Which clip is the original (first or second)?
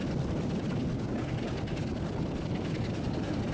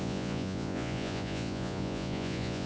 first